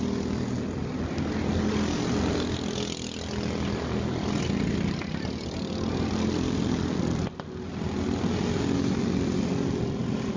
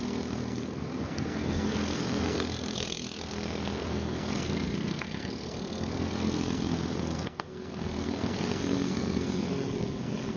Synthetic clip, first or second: second